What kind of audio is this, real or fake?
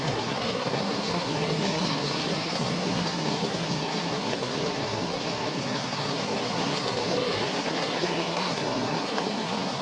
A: fake